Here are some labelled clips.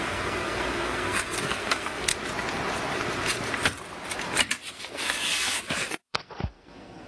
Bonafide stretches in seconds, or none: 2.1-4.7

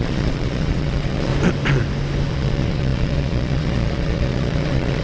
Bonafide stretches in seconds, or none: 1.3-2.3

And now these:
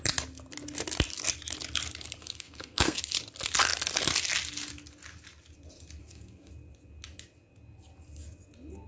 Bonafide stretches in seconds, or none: 0.0-2.2; 3.0-6.0; 6.5-8.9